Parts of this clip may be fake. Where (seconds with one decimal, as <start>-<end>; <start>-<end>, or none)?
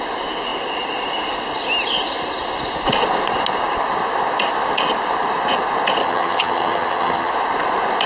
6.0-7.3